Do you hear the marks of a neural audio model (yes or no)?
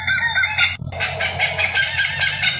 no